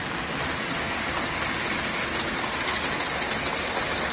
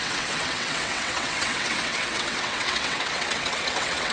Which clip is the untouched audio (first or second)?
first